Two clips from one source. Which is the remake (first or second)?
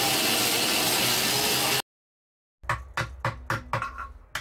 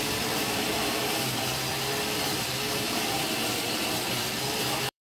second